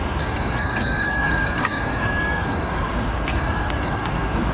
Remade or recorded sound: remade